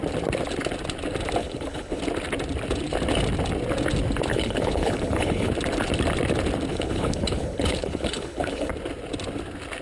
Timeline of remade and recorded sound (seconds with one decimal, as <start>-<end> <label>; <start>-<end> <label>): 0.0-1.4 recorded; 1.4-2.0 remade; 2.0-4.3 recorded; 4.3-5.5 remade; 5.5-6.7 recorded; 6.7-8.7 remade; 8.7-9.8 recorded